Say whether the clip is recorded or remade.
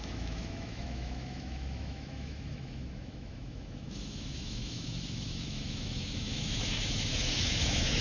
remade